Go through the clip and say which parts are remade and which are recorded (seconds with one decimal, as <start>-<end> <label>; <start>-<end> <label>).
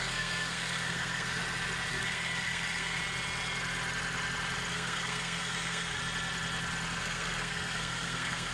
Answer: 0.0-1.4 remade; 1.4-1.9 recorded; 1.9-3.0 remade; 3.0-4.7 recorded; 4.7-6.0 remade; 6.0-7.0 recorded; 7.0-8.5 remade